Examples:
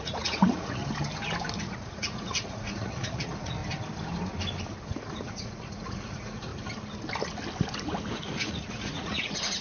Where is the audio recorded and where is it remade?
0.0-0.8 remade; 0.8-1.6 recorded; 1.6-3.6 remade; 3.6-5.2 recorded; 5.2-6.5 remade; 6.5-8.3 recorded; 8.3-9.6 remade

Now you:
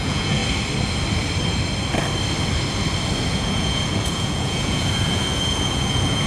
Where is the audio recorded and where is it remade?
0.0-0.4 remade; 0.4-3.3 recorded; 3.3-6.3 remade